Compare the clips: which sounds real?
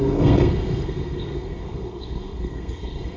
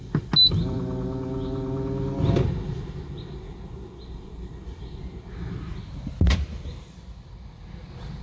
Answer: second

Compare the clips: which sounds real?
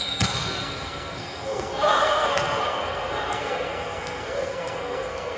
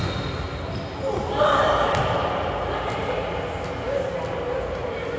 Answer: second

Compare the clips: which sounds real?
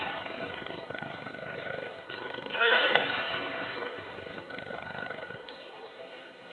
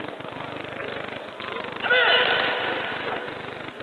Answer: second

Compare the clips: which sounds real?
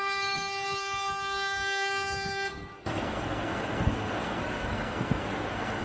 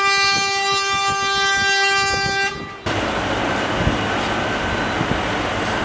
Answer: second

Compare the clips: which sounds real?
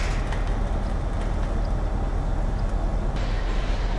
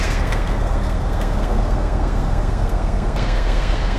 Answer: first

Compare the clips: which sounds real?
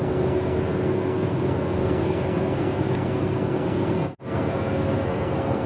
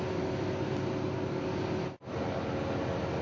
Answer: second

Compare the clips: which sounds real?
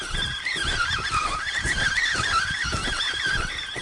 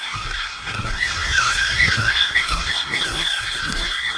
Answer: first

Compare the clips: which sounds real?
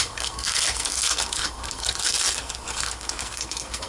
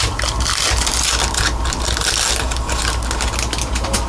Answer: second